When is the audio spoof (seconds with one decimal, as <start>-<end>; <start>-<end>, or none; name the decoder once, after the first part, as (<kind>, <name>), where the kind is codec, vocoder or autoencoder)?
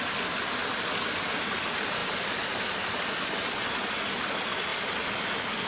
none